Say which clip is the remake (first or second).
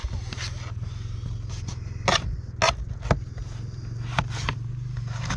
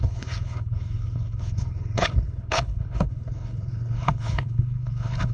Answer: second